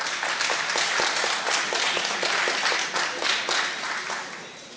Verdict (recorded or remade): recorded